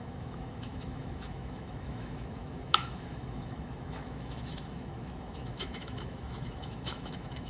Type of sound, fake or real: fake